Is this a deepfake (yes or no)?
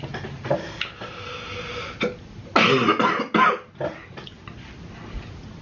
no